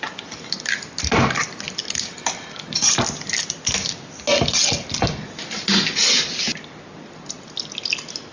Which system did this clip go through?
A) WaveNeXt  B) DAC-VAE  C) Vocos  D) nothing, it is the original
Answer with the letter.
D